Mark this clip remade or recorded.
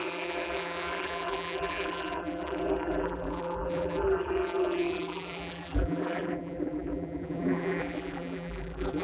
remade